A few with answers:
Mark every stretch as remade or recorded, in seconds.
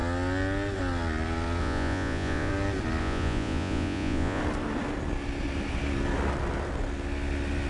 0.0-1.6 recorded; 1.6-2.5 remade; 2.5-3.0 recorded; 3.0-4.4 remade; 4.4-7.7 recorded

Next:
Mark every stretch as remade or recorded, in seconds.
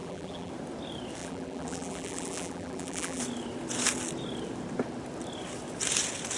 0.0-0.5 remade; 0.5-1.2 recorded; 1.2-3.2 remade; 3.2-6.4 recorded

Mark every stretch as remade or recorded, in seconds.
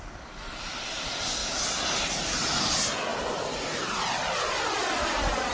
0.0-5.5 recorded